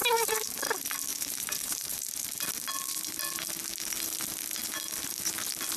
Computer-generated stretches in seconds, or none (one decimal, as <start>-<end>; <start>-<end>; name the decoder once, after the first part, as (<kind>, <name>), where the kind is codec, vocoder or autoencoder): 0.0-0.6 (vocoder, BigVGAN v2); 1.1-2.5